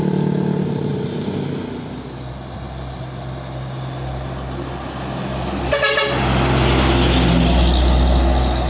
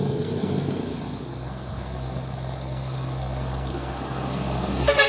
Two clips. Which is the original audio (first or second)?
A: first